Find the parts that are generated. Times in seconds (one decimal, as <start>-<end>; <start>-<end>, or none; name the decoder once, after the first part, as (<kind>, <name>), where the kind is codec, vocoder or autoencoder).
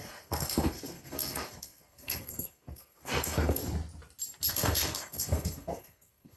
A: 0.0-3.6 (codec, SNAC); 4.5-6.4